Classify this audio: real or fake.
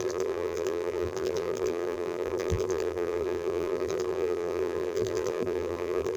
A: fake